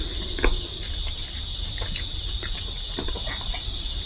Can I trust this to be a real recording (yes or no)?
yes